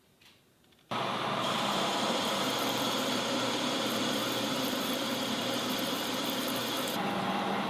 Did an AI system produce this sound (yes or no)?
yes